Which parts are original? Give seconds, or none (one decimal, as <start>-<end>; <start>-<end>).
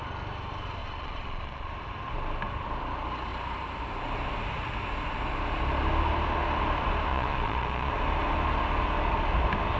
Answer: 0.0-0.8; 1.7-7.1; 7.9-9.8